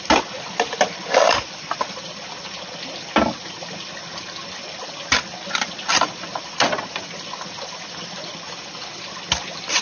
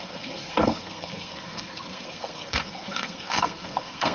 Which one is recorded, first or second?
first